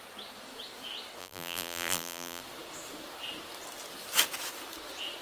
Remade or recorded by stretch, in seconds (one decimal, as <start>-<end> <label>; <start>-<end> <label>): 0.0-1.2 recorded; 1.2-2.4 remade; 2.4-5.2 recorded

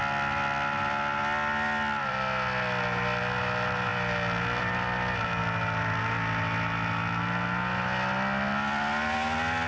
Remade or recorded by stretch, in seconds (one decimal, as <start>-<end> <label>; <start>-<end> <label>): 0.0-9.7 recorded

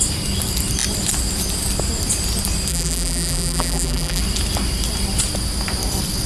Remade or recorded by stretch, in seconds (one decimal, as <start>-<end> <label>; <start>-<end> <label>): 0.0-2.7 recorded; 2.7-4.2 remade; 4.2-6.3 recorded

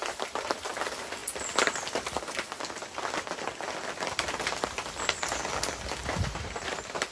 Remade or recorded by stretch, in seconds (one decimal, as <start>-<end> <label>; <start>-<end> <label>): 0.0-0.7 remade; 0.7-6.1 recorded; 6.1-7.1 remade